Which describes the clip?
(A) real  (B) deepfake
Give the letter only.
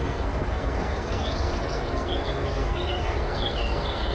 B